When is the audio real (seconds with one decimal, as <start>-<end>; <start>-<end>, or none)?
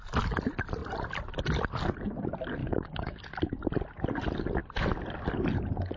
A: 0.0-2.6; 3.2-6.0